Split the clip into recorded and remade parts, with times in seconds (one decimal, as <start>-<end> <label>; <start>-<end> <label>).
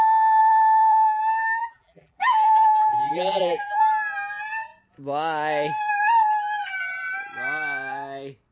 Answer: 0.0-0.4 recorded; 0.4-1.2 remade; 1.2-1.6 recorded; 1.6-3.9 remade; 3.9-8.5 recorded